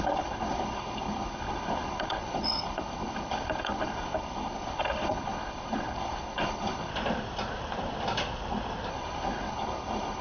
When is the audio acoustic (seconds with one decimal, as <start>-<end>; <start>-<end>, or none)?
6.9-8.9